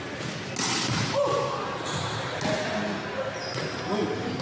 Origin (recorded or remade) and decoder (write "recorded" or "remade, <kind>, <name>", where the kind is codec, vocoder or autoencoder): recorded